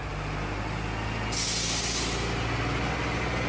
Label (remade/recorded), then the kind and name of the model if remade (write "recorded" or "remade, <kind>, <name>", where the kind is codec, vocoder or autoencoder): recorded